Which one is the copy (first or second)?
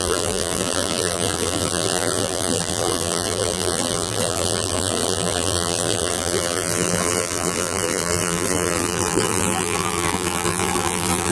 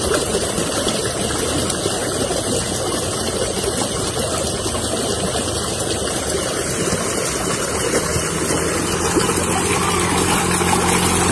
first